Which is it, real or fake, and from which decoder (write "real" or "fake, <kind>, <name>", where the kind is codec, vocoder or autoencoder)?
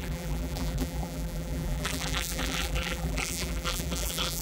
fake, vocoder, BigVGAN v2